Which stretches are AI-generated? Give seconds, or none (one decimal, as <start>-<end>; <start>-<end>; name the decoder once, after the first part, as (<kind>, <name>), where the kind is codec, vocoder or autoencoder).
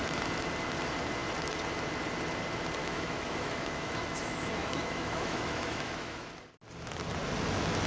2.8-6.3 (autoencoder, DAC-VAE)